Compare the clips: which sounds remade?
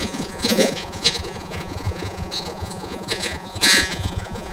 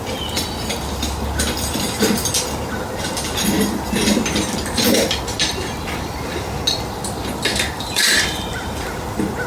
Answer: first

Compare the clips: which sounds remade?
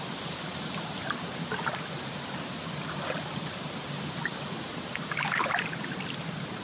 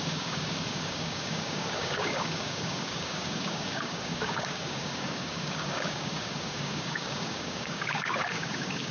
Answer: second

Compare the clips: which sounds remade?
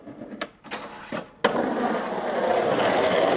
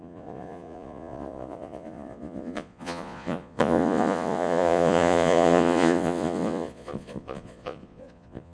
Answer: second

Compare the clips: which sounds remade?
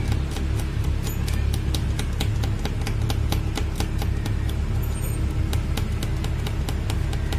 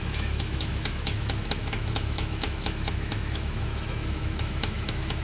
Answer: second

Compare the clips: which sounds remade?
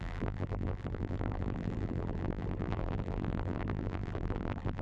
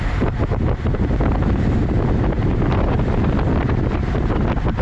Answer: first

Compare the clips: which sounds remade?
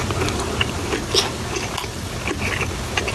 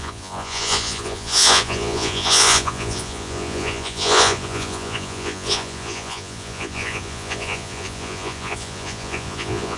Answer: second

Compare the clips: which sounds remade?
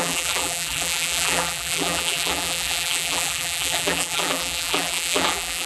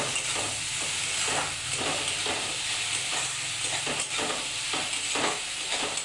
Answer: first